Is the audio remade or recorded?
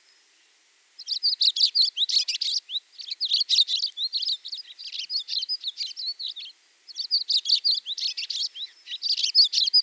recorded